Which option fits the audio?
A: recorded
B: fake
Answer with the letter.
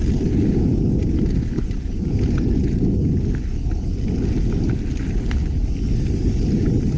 A